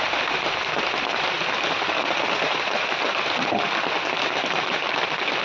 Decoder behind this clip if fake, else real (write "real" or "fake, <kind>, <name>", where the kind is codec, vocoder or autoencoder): real